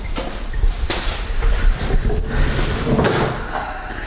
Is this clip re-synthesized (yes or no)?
yes